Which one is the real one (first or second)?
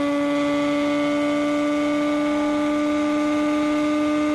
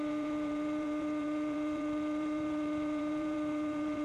first